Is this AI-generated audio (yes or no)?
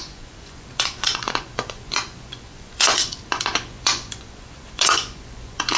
yes